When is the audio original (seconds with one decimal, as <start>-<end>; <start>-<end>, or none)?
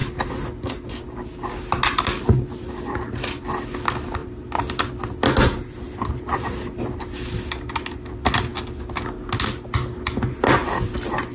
0.0-11.3